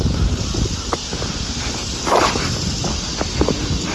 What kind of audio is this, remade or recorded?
recorded